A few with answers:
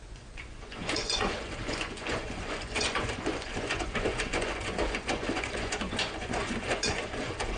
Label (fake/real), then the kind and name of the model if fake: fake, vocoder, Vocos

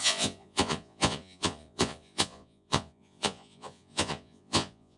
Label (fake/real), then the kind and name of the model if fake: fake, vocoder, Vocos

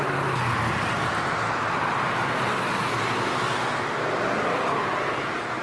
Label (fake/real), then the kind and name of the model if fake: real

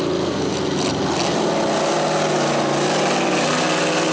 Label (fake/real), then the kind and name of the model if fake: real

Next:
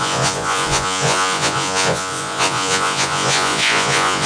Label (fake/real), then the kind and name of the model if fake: fake, vocoder, Vocos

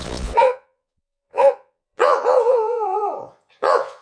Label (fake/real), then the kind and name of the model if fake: fake, vocoder, Vocos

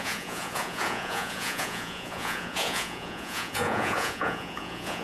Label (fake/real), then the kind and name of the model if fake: fake, vocoder, Vocos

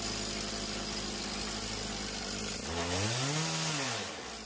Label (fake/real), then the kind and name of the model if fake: real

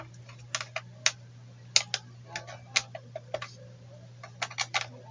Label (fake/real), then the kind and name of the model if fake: real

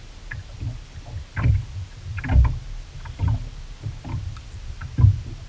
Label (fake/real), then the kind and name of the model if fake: real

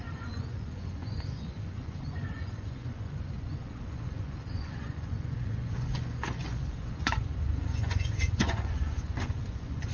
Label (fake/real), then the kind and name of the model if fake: fake, vocoder, Vocos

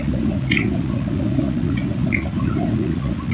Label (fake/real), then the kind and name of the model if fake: fake, vocoder, Vocos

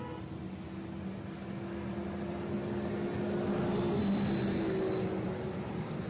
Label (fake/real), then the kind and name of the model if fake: real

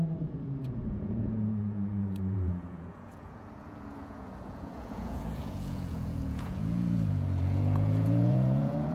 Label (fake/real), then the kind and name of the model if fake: fake, vocoder, Vocos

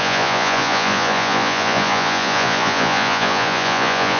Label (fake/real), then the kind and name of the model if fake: fake, vocoder, Vocos